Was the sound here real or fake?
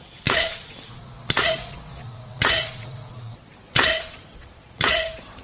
fake